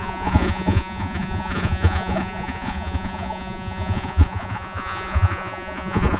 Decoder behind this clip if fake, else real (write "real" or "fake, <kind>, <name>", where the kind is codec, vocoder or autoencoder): fake, vocoder, Vocos